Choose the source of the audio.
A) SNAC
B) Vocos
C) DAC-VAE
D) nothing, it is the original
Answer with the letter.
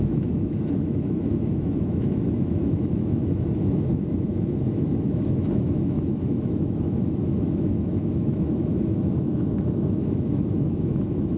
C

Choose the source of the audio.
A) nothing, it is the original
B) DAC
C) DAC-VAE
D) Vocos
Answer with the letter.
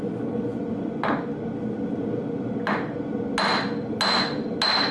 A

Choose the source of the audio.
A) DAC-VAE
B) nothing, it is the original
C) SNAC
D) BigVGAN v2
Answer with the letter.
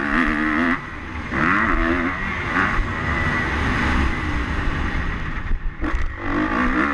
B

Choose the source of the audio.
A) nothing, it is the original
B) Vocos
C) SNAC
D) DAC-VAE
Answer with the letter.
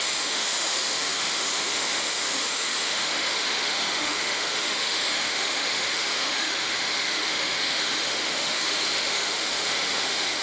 D